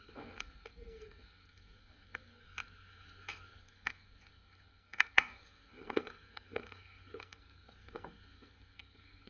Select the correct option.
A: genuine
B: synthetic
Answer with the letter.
B